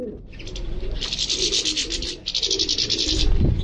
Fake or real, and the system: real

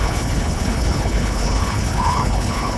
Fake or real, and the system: fake, codec, HILCodec